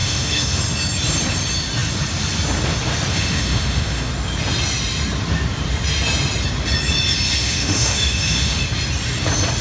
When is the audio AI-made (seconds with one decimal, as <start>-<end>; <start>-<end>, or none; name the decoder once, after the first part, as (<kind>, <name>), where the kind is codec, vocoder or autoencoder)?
0.0-0.6 (autoencoder, DAC-VAE); 3.1-4.1; 7.4-8.6